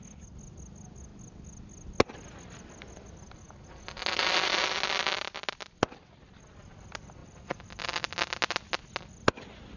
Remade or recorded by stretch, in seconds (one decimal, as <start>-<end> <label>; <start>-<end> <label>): 0.0-9.8 recorded